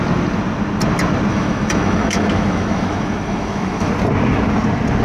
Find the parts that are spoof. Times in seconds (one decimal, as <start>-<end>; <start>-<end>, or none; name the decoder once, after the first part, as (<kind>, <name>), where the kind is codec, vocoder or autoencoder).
1.3-3.9 (autoencoder, DAC-VAE)